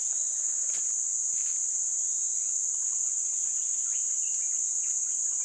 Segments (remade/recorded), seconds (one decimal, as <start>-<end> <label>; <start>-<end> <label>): 0.0-5.4 recorded